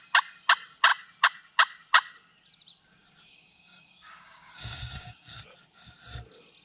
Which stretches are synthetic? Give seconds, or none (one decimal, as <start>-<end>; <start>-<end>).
3.3-5.4